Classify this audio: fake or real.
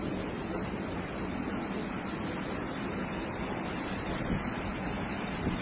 real